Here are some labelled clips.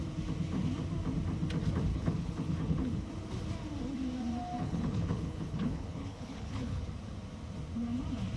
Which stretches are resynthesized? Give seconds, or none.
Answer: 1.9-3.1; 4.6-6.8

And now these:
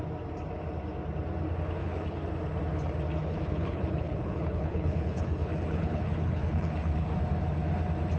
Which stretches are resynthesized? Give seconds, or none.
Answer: 1.8-2.3; 3.2-7.1